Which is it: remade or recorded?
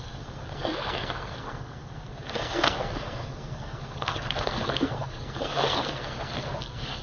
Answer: remade